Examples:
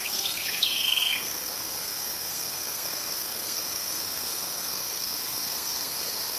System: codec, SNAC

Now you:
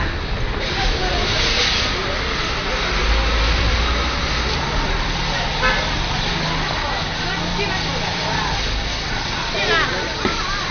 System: none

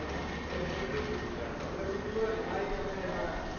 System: none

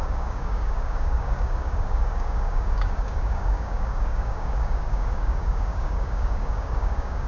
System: codec, DAC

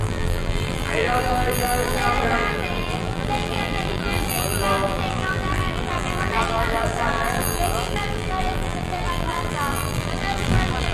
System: vocoder, BigVGAN v2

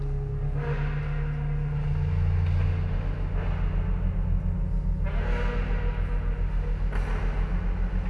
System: none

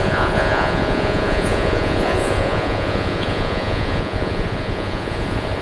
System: vocoder, Vocos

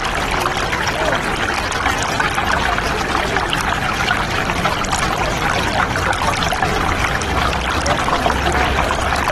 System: none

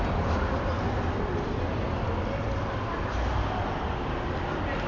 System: none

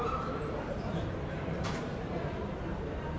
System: vocoder, BigVGAN v2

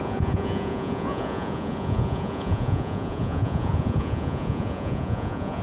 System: vocoder, Vocos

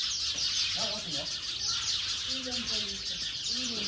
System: none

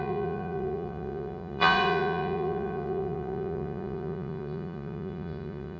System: vocoder, Vocos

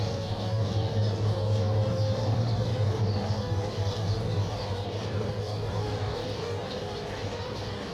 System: codec, DAC